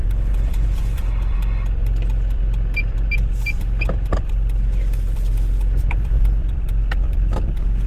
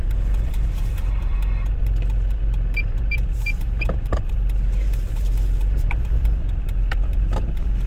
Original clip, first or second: first